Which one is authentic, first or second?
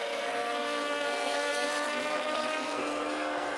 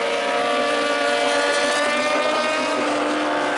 second